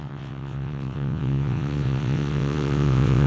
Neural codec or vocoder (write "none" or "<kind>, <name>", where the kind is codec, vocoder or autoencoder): vocoder, WaveNeXt